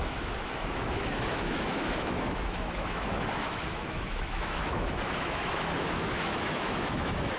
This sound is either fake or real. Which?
fake